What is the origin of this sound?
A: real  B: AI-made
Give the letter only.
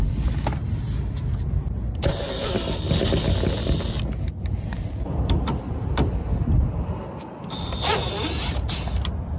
A